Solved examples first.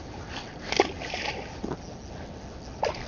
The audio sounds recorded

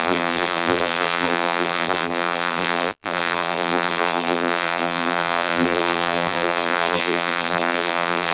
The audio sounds remade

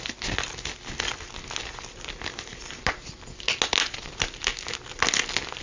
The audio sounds recorded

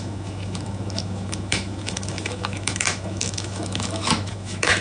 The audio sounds remade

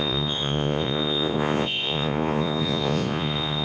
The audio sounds remade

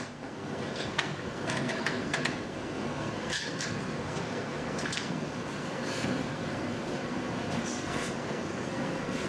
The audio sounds remade